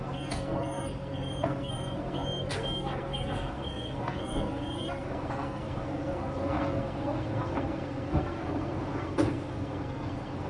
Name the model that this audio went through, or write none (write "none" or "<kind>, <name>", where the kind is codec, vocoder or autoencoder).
codec, SNAC